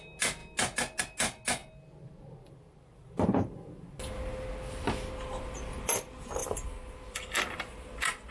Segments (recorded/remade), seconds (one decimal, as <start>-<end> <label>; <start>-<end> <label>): 0.0-8.3 recorded